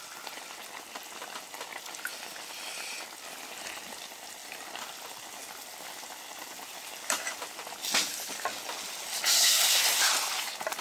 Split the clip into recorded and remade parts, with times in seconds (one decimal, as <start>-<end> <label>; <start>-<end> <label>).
0.0-9.3 recorded; 9.3-9.8 remade; 9.8-10.8 recorded